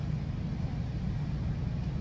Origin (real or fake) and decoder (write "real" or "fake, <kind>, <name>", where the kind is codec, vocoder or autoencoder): real